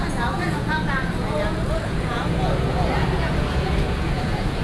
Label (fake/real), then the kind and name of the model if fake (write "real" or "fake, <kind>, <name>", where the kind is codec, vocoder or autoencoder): fake, vocoder, Vocos